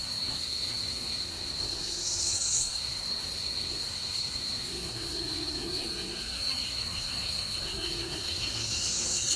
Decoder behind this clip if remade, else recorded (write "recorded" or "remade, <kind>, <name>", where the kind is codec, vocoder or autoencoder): remade, codec, SNAC